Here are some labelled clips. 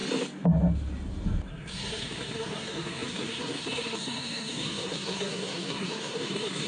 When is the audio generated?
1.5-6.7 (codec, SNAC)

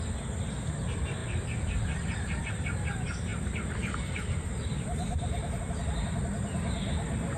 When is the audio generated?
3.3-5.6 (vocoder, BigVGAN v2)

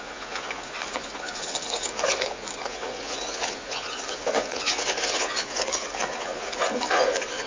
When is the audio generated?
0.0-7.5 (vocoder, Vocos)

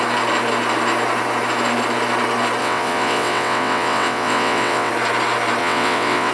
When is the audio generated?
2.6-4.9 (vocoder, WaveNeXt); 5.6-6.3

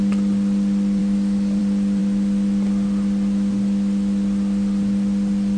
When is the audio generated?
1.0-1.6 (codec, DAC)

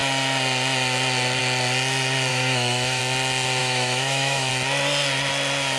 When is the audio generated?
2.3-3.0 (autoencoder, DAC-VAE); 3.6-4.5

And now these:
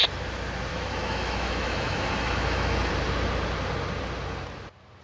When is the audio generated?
0.7-2.9 (autoencoder, DAC-VAE)

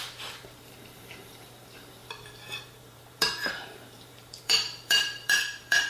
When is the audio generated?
0.0-5.9 (vocoder, BigVGAN v2)